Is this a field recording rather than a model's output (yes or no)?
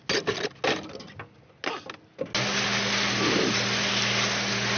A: yes